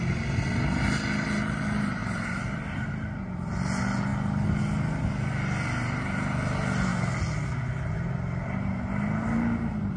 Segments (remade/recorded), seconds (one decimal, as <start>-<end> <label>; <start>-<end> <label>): 0.0-2.0 recorded; 2.0-2.9 remade; 2.9-10.0 recorded